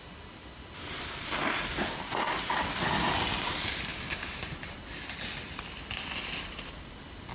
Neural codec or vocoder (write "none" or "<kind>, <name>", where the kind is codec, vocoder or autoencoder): none